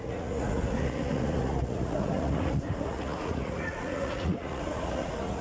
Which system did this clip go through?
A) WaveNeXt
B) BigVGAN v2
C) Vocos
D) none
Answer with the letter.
C